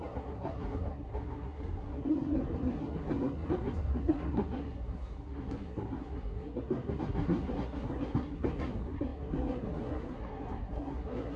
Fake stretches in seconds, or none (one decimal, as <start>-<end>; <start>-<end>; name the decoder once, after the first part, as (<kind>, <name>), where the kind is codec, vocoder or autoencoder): 0.0-11.4 (codec, SNAC)